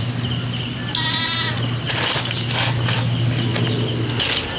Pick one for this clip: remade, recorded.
recorded